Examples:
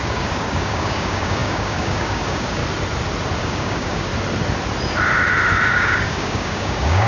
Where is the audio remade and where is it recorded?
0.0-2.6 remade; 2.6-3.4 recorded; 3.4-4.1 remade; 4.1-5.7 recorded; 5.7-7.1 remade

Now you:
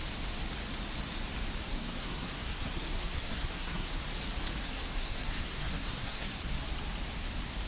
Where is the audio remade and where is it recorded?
0.0-1.7 recorded; 1.7-4.0 remade; 4.0-4.6 recorded; 4.6-6.4 remade; 6.4-7.7 recorded

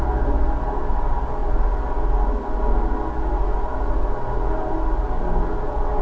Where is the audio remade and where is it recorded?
0.0-6.0 recorded

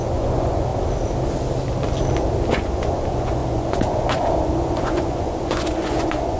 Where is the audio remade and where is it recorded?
0.0-0.7 remade; 0.7-2.5 recorded; 2.5-6.4 remade

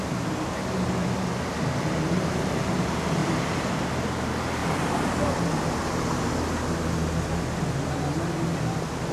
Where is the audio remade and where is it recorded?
0.0-3.2 recorded; 3.2-3.9 remade; 3.9-4.6 recorded; 4.6-5.3 remade; 5.3-9.1 recorded

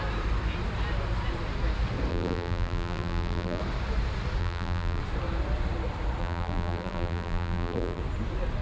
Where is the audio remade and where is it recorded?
0.0-2.1 recorded; 2.1-3.6 remade; 3.6-4.4 recorded; 4.4-5.0 remade; 5.0-6.2 recorded; 6.2-8.0 remade; 8.0-8.6 recorded

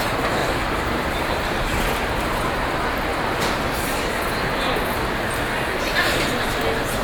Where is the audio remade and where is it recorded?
0.0-0.4 recorded; 0.4-2.4 remade; 2.4-5.7 recorded; 5.7-6.5 remade; 6.5-7.0 recorded